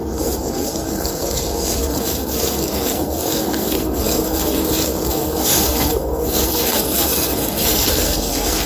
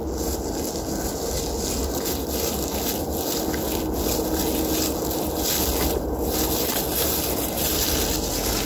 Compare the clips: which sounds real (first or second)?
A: second